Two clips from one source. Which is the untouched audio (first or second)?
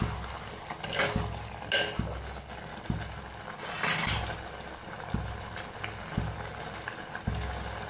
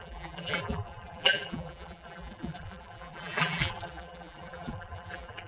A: first